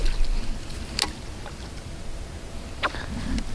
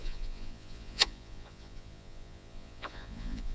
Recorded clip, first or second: first